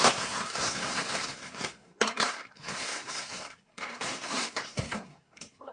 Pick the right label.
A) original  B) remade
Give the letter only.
B